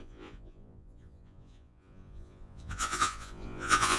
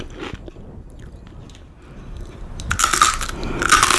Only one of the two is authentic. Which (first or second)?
second